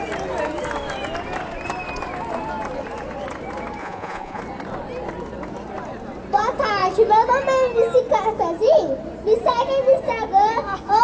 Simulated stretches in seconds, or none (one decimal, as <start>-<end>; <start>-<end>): 3.8-4.4